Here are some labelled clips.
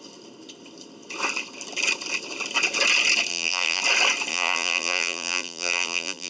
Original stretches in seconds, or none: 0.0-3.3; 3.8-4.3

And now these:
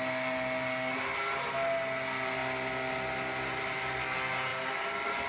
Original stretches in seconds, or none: 0.0-5.3

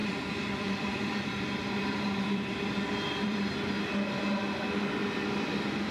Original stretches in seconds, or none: 3.5-5.9

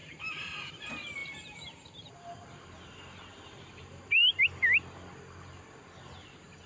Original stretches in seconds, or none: 0.7-1.2; 4.4-6.7

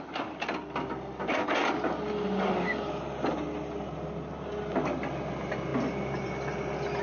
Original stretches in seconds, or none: 0.0-5.7; 6.3-7.0